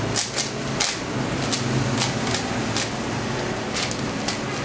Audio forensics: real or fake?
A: real